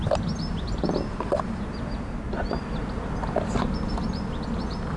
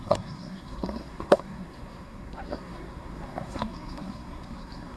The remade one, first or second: second